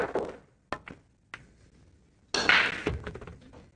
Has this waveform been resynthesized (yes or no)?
no